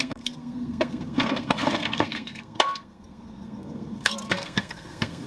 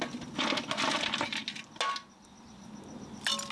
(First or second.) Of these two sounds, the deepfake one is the first